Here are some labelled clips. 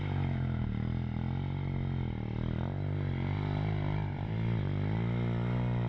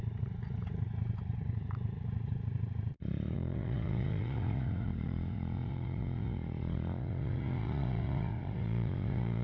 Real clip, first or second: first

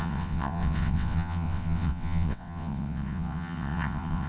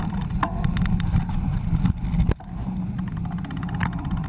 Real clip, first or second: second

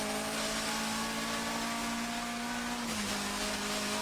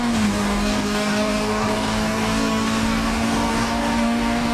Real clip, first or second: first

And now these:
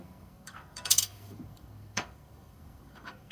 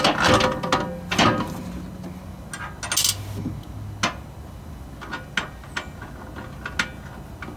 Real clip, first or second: second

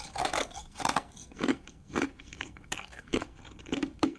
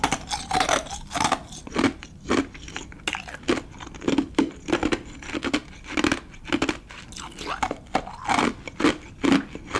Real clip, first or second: second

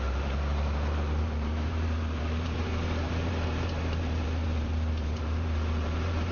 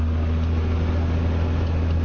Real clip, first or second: second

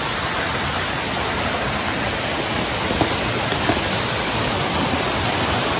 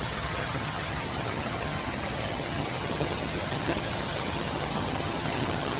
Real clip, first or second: first